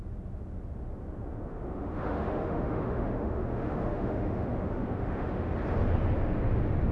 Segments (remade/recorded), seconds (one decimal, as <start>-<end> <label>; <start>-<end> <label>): 0.0-1.3 recorded; 1.3-5.4 remade; 5.4-6.9 recorded

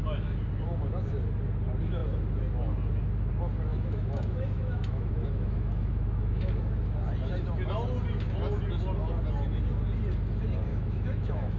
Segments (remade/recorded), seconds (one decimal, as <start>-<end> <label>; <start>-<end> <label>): 0.0-3.7 recorded; 3.7-6.5 remade; 6.5-10.7 recorded; 10.7-11.6 remade

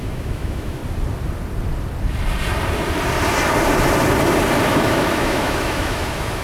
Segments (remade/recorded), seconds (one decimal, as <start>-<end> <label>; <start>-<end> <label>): 0.0-0.8 remade; 0.8-4.6 recorded; 4.6-6.4 remade

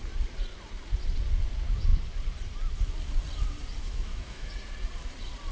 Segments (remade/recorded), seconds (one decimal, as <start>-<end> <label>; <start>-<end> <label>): 0.0-3.8 recorded; 3.8-4.5 remade; 4.5-5.5 recorded